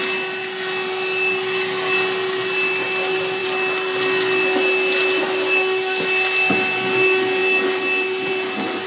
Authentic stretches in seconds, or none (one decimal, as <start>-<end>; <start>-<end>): 0.0-8.9